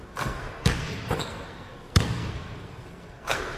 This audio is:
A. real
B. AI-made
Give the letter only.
B